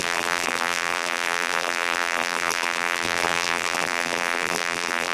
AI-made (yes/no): yes